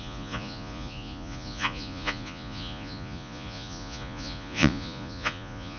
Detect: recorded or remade remade